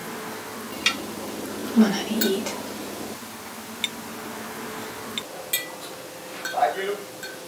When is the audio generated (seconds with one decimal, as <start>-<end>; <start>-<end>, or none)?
none